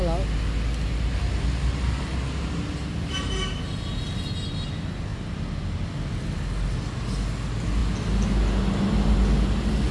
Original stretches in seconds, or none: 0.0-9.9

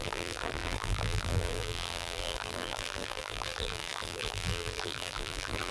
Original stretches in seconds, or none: none

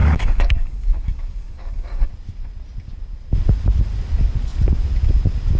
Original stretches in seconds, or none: 2.1-5.6

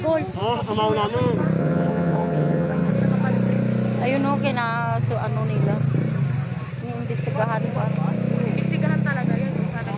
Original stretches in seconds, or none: 0.0-1.6; 2.9-10.0

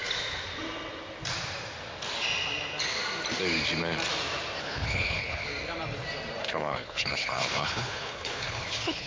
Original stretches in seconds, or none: 0.0-4.6; 5.5-6.4

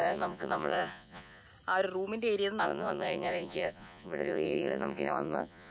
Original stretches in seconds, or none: 1.4-2.6

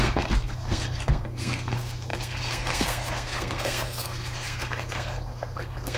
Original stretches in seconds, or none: none